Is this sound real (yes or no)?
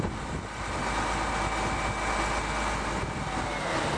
yes